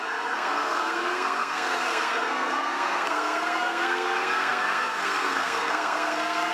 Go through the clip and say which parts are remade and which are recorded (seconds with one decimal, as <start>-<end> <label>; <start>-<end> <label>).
0.0-6.5 remade